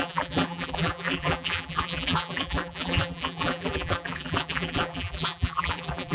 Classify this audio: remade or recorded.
remade